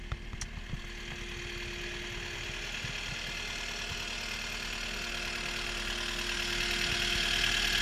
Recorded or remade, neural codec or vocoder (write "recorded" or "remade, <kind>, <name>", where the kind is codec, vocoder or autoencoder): recorded